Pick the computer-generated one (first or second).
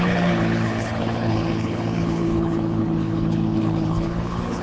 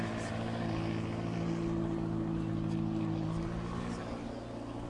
first